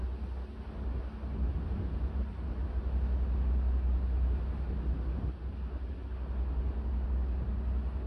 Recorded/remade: recorded